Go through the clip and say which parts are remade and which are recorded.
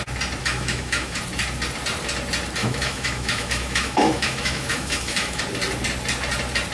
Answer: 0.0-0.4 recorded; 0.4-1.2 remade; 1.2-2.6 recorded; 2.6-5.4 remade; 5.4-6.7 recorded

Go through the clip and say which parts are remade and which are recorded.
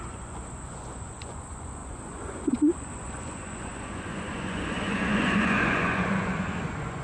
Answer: 0.0-7.0 remade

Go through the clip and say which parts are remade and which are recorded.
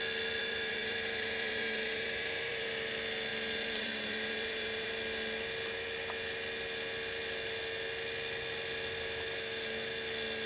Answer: 0.0-0.4 recorded; 0.4-2.7 remade; 2.7-3.3 recorded; 3.3-4.9 remade; 4.9-10.5 recorded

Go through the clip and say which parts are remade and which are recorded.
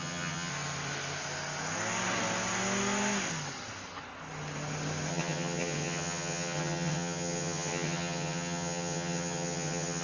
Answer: 0.0-0.5 remade; 0.5-5.1 recorded; 5.1-10.0 remade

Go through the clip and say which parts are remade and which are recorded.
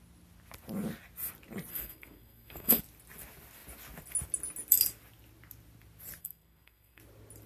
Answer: 0.0-1.7 recorded; 1.7-2.8 remade; 2.8-6.2 recorded; 6.2-7.0 remade; 7.0-7.5 recorded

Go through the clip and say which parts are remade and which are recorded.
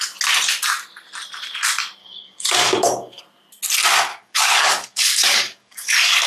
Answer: 0.0-2.0 recorded; 2.0-3.2 remade; 3.2-4.1 recorded; 4.1-6.3 remade